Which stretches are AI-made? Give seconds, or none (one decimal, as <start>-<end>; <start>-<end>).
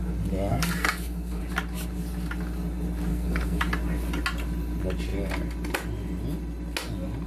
0.5-1.4; 3.1-3.6